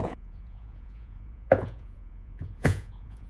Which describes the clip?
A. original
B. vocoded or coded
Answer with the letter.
B